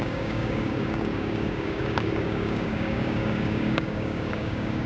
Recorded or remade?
remade